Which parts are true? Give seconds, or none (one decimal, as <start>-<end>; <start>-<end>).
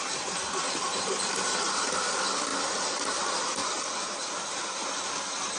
0.0-5.6